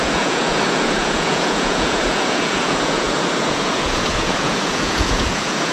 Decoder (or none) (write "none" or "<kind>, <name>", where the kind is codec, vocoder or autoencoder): vocoder, Vocos